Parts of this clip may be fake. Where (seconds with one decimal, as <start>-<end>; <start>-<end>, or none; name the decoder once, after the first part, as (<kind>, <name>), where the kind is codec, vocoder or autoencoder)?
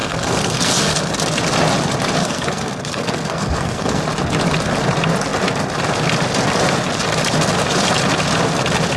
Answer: 0.0-1.1 (codec, SNAC); 2.2-4.0